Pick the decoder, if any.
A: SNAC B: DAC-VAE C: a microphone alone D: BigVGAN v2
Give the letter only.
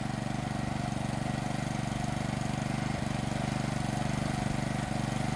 C